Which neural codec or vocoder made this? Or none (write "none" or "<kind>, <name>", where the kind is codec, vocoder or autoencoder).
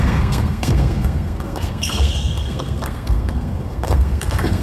codec, SNAC